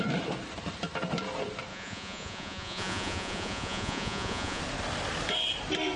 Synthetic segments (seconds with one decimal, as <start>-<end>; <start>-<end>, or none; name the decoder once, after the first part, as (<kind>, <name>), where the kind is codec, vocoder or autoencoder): 1.7-4.6 (vocoder, Vocos)